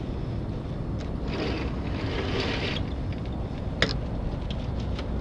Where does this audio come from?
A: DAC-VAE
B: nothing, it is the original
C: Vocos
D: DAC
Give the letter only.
B